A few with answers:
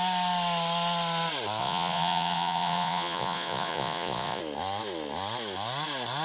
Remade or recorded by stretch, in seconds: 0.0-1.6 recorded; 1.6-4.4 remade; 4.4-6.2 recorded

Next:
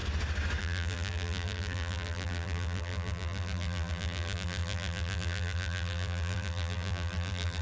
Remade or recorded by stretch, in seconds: 0.0-0.6 recorded; 0.6-7.6 remade

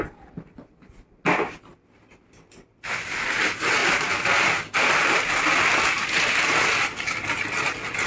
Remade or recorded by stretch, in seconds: 0.0-8.1 recorded

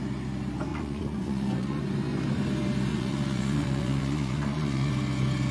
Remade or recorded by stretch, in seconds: 0.0-0.7 recorded; 0.7-1.8 remade; 1.8-2.9 recorded; 2.9-4.9 remade; 4.9-5.5 recorded